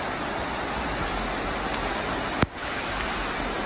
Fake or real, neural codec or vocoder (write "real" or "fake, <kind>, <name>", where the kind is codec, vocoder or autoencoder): real